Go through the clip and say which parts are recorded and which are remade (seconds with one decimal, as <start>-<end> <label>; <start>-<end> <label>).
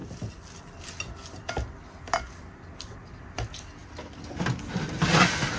0.0-5.6 recorded